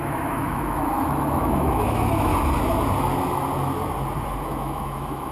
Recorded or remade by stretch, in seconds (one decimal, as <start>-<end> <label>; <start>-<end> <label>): 0.0-2.3 remade; 2.3-4.4 recorded; 4.4-5.3 remade